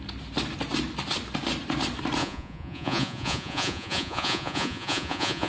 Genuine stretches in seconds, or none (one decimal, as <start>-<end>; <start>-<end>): 0.0-2.2